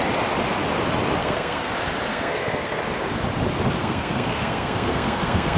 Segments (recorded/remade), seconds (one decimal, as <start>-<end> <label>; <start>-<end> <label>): 0.0-1.2 recorded; 1.2-1.7 remade; 1.7-2.1 recorded; 2.1-2.8 remade; 2.8-3.8 recorded; 3.8-5.6 remade